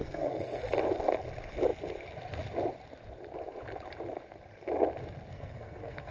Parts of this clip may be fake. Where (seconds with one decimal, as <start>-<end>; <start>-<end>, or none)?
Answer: 0.0-0.6; 5.3-6.1

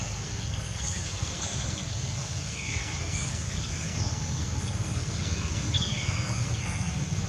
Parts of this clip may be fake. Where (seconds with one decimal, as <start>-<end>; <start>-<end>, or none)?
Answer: 0.0-7.3

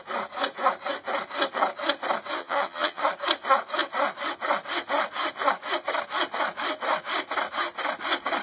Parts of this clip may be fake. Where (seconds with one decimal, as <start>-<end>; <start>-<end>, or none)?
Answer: 2.4-3.0

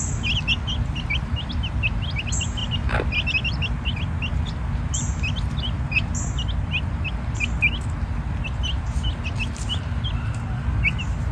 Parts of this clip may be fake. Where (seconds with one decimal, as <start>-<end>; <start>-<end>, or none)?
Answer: none

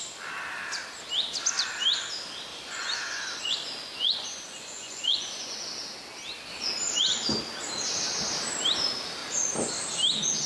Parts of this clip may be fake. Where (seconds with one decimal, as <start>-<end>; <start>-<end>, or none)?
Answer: 2.5-5.7

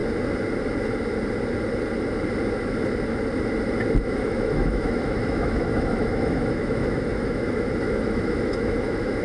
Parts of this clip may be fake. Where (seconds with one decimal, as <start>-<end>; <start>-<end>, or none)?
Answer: 4.0-9.2